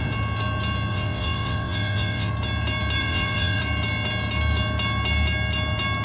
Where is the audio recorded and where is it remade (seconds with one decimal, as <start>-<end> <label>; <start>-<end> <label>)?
0.0-0.9 recorded; 0.9-2.3 remade; 2.3-3.0 recorded; 3.0-3.6 remade; 3.6-6.0 recorded